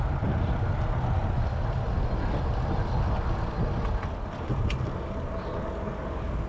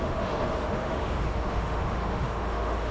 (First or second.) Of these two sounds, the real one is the first